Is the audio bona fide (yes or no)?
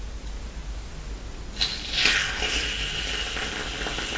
yes